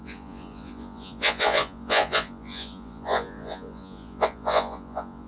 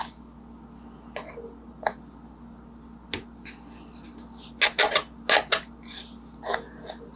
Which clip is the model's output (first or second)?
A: first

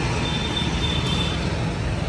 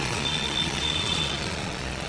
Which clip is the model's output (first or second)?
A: second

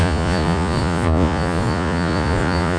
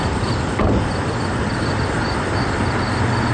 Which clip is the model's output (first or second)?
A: first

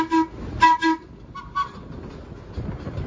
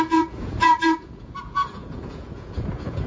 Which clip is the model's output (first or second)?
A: second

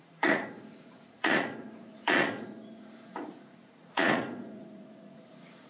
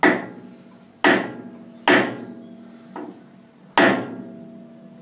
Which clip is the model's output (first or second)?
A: first